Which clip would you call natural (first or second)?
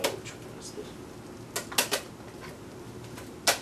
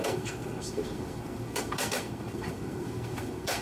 first